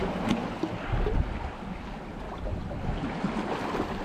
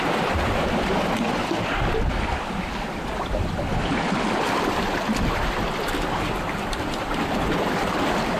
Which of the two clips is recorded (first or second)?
first